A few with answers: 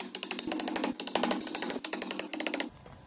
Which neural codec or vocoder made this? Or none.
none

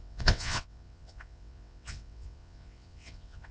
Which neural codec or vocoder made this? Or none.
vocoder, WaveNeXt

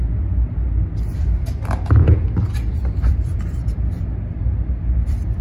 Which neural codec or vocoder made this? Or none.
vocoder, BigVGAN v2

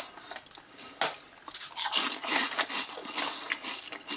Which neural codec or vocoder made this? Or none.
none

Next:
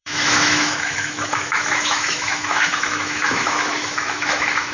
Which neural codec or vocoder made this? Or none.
autoencoder, DAC-VAE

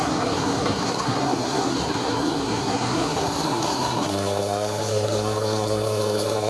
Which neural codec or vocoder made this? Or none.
codec, SNAC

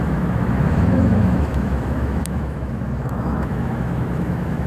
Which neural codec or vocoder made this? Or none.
autoencoder, DAC-VAE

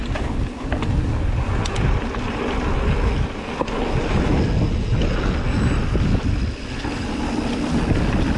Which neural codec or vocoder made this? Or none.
none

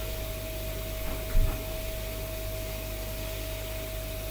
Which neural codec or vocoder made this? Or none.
none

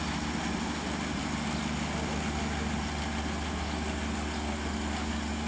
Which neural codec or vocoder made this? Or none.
none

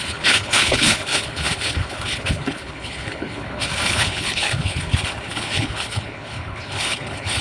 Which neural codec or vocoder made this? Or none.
codec, HILCodec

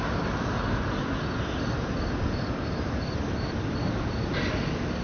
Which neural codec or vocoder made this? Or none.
none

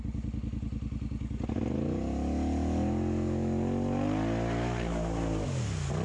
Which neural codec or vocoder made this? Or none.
none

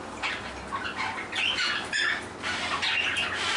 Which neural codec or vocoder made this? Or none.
none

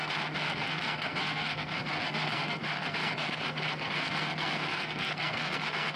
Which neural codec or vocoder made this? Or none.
codec, SNAC